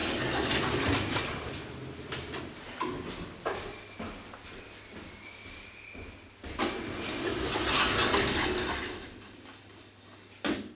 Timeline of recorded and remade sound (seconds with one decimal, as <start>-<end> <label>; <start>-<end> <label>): 0.0-10.7 recorded